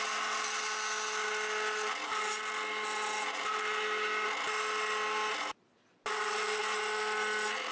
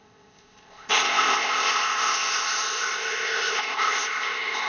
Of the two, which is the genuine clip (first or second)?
first